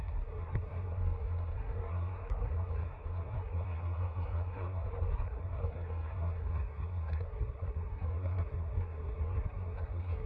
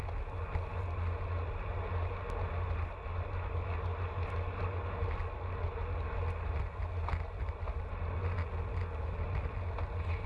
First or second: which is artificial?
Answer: first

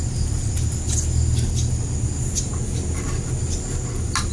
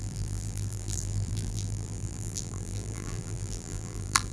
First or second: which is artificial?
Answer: second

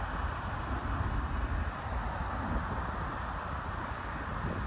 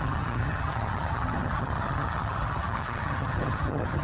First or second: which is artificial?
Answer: second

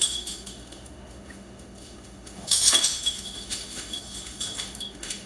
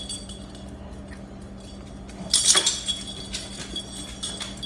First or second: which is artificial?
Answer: first